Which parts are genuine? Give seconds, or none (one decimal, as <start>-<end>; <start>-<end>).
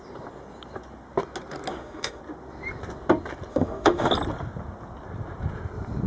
0.0-1.7; 2.2-3.5; 4.1-6.1